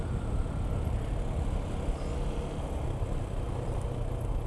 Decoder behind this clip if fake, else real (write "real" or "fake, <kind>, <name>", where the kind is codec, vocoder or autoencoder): real